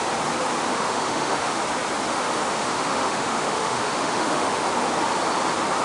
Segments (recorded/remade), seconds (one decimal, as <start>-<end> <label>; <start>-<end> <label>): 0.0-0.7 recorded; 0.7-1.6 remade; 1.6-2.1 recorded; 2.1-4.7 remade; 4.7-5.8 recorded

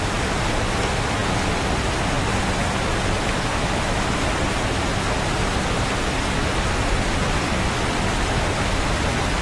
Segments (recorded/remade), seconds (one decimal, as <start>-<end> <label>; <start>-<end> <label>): 0.0-9.4 recorded

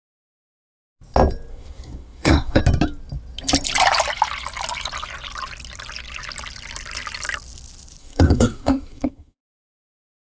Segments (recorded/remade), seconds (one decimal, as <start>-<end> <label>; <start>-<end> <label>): 0.0-1.5 recorded; 1.5-2.6 remade; 2.6-8.0 recorded; 8.0-9.4 remade; 9.4-10.3 recorded